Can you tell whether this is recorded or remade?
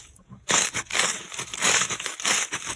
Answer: remade